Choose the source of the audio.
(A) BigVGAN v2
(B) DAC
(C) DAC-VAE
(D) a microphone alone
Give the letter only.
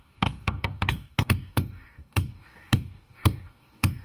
B